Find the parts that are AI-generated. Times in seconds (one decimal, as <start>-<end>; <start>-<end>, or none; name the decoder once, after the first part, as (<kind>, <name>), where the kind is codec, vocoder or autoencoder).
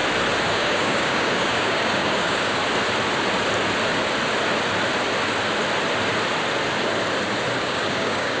0.5-2.6 (codec, DAC); 7.6-8.4